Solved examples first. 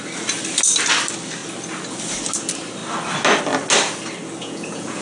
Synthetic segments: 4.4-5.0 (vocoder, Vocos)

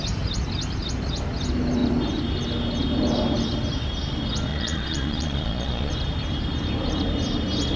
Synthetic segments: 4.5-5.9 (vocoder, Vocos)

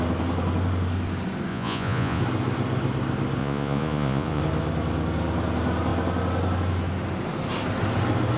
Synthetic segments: 1.5-2.2 (vocoder, Vocos); 3.4-4.4

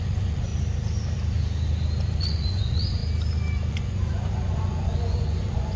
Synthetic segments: 0.0-0.5 (vocoder, Vocos); 2.2-3.0; 3.7-5.8